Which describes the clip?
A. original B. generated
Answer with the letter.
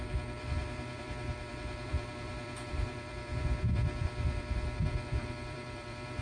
B